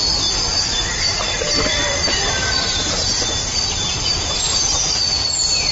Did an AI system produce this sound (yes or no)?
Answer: no